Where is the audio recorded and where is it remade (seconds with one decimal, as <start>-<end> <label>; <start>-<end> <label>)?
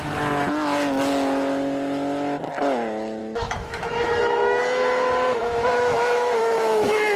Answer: 0.0-3.2 recorded; 3.2-4.6 remade; 4.6-5.4 recorded; 5.4-7.2 remade